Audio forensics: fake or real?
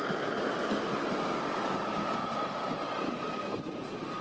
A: fake